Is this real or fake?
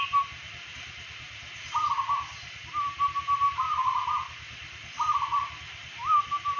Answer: real